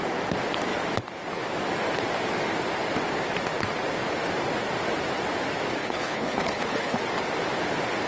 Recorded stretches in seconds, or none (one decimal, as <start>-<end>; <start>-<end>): 0.0-5.8; 7.0-8.1